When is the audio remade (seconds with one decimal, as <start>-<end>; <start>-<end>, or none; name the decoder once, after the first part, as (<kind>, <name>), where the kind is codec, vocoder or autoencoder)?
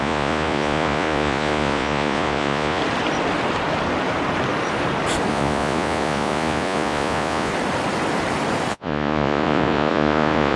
0.0-2.8 (vocoder, Vocos); 5.3-7.5; 8.7-10.6